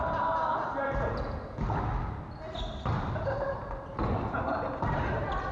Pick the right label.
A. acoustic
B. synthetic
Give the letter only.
A